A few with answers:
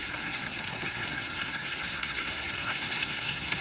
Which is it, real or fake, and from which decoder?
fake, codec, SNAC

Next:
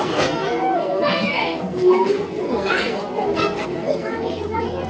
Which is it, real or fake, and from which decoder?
fake, codec, SNAC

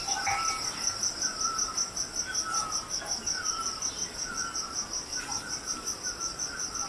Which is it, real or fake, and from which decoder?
real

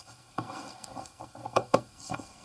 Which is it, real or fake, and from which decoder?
fake, codec, SNAC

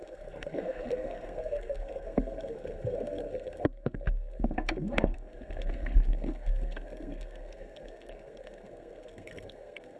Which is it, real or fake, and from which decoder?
fake, codec, SNAC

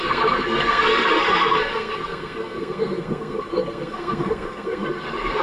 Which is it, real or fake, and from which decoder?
fake, codec, SNAC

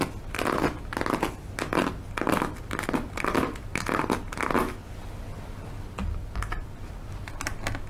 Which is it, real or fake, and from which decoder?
real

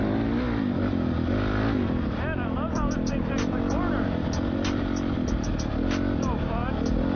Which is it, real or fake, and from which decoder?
real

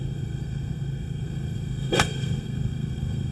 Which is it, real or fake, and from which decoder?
fake, codec, SNAC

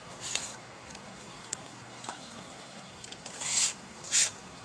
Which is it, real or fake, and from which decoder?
fake, codec, SNAC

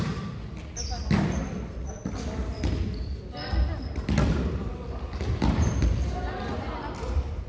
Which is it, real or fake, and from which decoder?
real